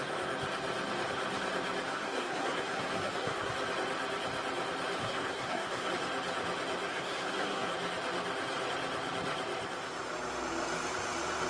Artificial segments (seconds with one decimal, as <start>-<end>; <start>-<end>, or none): 1.9-3.5; 5.0-5.9; 6.9-7.7